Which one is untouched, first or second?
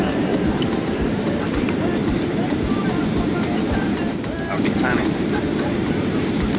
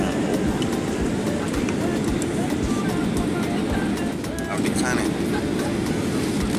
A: second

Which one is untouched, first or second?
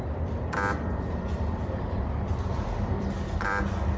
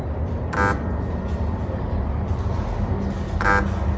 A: second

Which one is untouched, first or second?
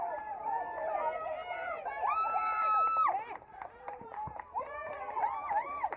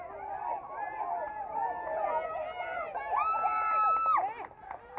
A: second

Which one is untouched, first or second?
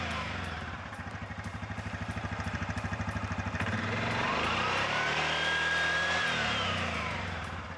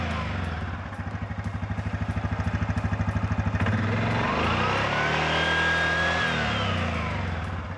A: second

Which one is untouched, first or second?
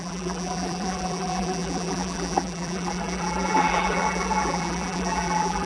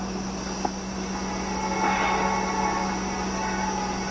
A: second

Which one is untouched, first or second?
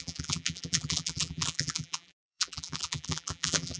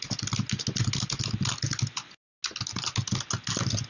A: second